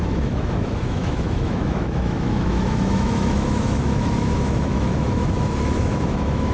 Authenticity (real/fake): fake